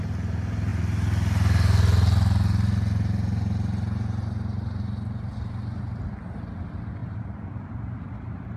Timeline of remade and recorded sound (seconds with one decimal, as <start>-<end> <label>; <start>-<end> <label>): 0.0-7.0 recorded; 7.0-8.2 remade; 8.2-8.6 recorded